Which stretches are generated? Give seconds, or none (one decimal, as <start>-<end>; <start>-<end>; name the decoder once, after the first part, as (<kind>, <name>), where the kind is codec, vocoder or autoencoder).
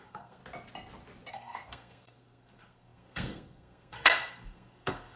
0.0-0.4 (codec, SNAC); 1.3-5.2